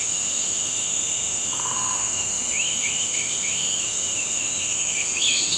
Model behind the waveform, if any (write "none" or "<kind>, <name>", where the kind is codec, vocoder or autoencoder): autoencoder, DAC-VAE